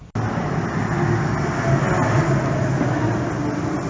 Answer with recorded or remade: recorded